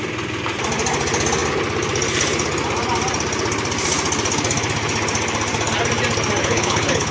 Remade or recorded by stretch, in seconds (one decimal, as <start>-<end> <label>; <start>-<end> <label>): 0.0-6.4 recorded; 6.4-7.1 remade